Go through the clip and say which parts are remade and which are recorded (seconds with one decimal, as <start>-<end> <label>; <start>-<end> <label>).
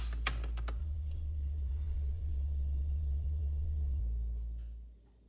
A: 0.0-0.8 recorded; 0.8-4.0 remade; 4.0-5.3 recorded